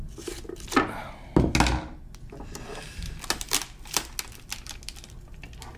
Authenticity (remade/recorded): recorded